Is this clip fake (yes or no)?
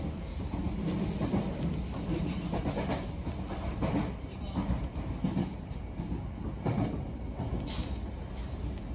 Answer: no